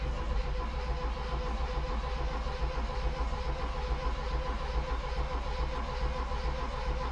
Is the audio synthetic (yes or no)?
no